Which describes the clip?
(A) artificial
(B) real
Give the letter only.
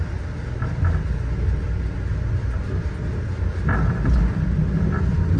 B